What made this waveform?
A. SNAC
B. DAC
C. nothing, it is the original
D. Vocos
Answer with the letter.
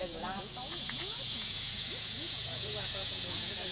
D